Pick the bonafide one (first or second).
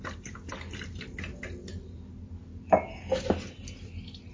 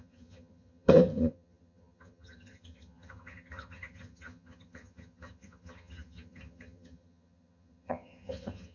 first